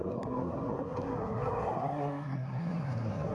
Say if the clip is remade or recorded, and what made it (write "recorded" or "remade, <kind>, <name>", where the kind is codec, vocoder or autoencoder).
remade, codec, SNAC